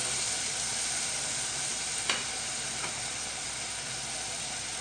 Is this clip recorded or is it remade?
recorded